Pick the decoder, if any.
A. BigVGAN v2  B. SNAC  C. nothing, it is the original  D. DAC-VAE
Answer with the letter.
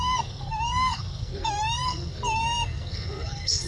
B